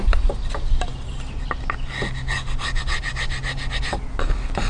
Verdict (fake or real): real